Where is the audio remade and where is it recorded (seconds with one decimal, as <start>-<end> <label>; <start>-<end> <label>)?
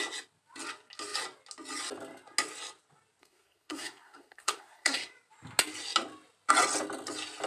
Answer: 0.0-3.2 recorded; 3.2-5.1 remade; 5.1-7.5 recorded